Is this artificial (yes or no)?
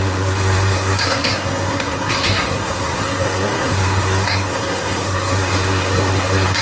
yes